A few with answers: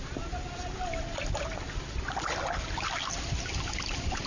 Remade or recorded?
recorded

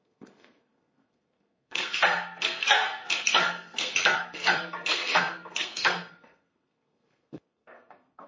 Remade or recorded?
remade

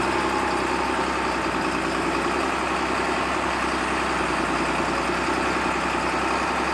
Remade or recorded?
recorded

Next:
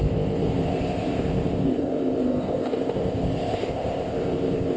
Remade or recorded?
remade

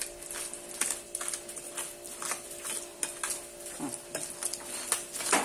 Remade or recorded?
recorded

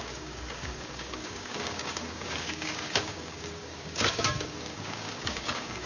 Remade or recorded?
remade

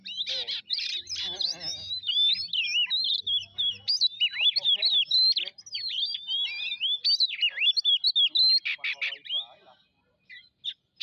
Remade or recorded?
recorded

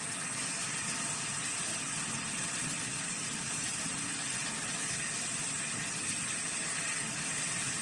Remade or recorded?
recorded